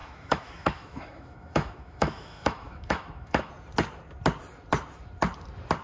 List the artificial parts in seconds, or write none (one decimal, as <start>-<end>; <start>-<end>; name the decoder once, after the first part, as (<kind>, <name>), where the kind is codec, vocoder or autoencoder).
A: 0.0-3.5 (autoencoder, DAC-VAE)